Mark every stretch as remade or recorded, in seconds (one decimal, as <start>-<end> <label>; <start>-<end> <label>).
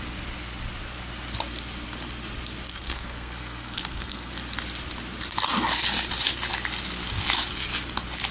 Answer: 0.0-2.7 recorded; 2.7-4.3 remade; 4.3-8.3 recorded